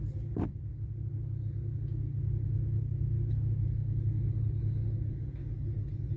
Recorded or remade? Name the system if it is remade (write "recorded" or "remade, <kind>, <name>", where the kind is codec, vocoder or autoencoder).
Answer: recorded